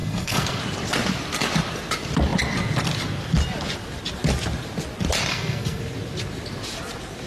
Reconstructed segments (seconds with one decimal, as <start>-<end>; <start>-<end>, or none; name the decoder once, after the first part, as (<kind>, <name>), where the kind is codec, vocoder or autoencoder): 0.0-0.6 (codec, SNAC); 5.3-5.8

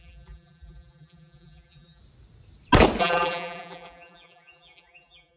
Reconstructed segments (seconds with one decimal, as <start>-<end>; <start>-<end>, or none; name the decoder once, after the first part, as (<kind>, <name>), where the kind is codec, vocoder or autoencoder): 0.0-2.0 (vocoder, BigVGAN v2); 3.0-5.4